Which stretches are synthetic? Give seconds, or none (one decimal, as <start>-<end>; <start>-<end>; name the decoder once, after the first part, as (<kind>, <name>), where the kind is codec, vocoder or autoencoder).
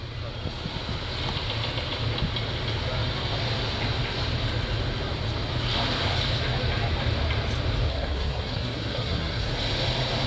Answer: 7.9-9.5 (codec, SNAC)